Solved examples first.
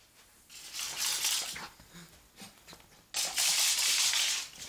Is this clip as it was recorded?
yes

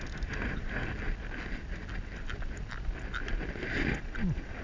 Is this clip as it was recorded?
yes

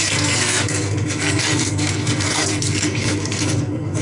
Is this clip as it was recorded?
no